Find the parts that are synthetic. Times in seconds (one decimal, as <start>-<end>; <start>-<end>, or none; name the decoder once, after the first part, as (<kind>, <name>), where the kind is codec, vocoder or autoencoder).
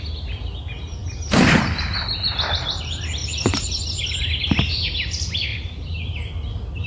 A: 1.0-2.8 (vocoder, BigVGAN v2); 3.2-3.8; 5.5-6.0